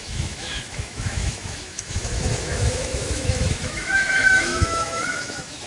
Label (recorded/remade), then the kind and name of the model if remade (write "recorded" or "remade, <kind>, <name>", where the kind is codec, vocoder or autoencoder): remade, autoencoder, DAC-VAE